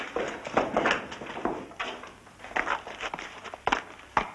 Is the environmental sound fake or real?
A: real